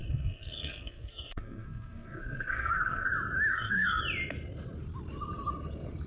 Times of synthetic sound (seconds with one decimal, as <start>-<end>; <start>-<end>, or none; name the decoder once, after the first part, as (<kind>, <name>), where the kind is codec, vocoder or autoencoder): 0.0-3.1 (codec, SNAC); 3.5-4.0